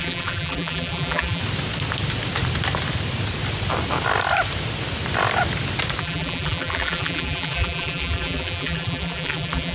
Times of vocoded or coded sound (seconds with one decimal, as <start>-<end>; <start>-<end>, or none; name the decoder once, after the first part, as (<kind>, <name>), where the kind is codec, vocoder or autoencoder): 0.0-1.4 (vocoder, BigVGAN v2); 6.0-9.7